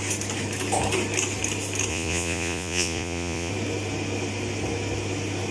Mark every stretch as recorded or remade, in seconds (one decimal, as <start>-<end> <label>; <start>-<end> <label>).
0.0-1.9 recorded; 1.9-3.5 remade; 3.5-5.5 recorded